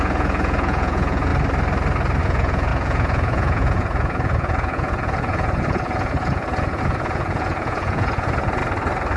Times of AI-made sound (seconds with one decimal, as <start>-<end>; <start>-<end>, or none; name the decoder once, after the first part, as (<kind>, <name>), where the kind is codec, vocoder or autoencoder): 0.0-1.3 (vocoder, Vocos); 2.2-8.6